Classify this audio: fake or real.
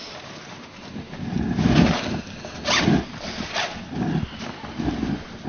real